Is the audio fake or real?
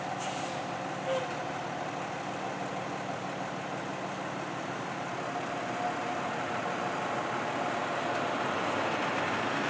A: real